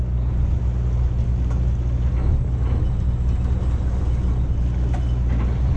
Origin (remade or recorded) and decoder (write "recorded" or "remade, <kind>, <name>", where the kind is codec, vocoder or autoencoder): recorded